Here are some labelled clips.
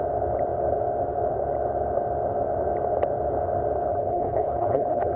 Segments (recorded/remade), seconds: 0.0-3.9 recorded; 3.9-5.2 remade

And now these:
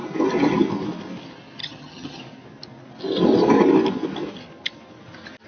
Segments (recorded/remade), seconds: 0.0-1.6 recorded; 1.6-2.2 remade; 2.2-5.5 recorded

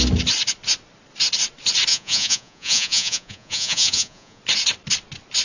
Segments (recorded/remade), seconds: 0.0-1.9 recorded; 1.9-4.4 remade; 4.4-5.4 recorded

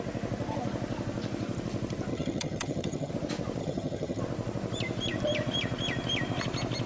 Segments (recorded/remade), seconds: 0.0-2.1 recorded; 2.1-3.1 remade; 3.1-3.6 recorded; 3.6-4.2 remade; 4.2-6.9 recorded